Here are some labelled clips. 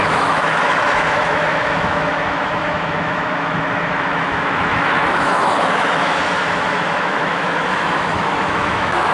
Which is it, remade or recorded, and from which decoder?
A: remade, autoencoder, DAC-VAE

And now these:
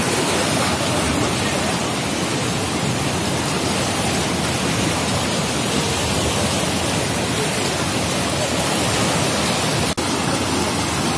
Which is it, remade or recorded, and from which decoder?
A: recorded